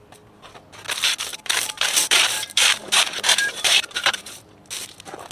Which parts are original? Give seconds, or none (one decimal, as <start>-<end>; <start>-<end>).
0.0-1.3; 4.5-5.3